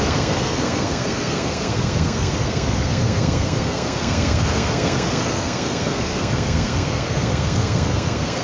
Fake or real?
fake